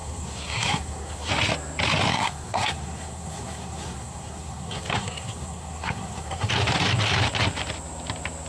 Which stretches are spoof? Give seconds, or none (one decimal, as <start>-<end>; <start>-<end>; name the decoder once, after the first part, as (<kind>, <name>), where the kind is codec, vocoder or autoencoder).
0.0-1.3 (codec, SNAC); 2.1-6.5